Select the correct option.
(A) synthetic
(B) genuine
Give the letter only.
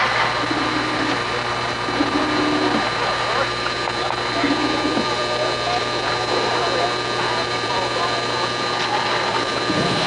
A